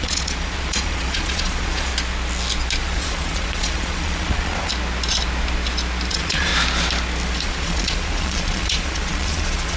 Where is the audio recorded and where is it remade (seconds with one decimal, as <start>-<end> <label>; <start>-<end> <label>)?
0.0-1.9 remade; 1.9-2.8 recorded; 2.8-4.7 remade; 4.7-6.1 recorded; 6.1-6.5 remade; 6.5-7.4 recorded; 7.4-9.8 remade